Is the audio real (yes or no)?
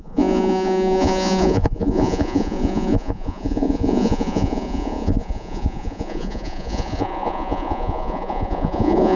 no